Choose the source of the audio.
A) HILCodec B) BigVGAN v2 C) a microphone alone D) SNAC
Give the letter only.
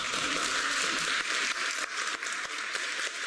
B